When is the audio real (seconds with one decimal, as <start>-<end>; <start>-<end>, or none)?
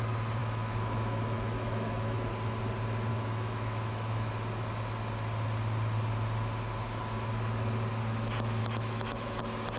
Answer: 0.0-0.4; 2.3-3.1; 4.3-8.6; 9.4-9.8